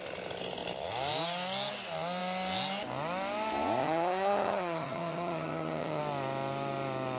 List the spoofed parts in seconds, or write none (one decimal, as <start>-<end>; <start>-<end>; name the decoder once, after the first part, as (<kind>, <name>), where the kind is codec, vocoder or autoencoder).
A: 3.8-6.0 (vocoder, HiFi-GAN)